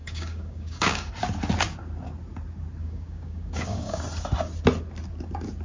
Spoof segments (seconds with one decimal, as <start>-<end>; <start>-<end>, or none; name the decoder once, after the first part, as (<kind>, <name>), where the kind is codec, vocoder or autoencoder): 0.0-1.1 (codec, DAC); 2.8-4.0